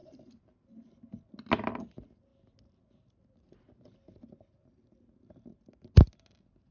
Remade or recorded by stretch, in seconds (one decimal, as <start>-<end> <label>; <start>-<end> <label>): 0.0-6.7 recorded